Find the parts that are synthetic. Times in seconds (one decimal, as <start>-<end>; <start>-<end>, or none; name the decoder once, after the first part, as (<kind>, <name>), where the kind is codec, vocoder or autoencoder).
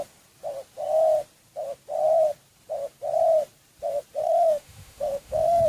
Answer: 4.2-5.7 (autoencoder, DAC-VAE)